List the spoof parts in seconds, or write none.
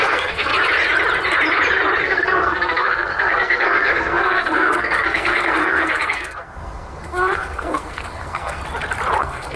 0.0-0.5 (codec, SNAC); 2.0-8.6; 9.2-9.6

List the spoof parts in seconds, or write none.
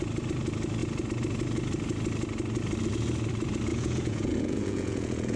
3.7-5.4 (vocoder, Vocos)